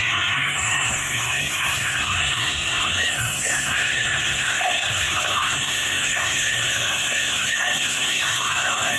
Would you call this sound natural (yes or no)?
no